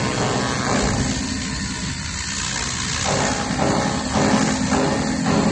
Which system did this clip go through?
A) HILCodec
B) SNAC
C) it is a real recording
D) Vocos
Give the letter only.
C